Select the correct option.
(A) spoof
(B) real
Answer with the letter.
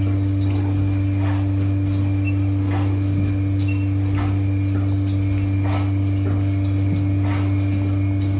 B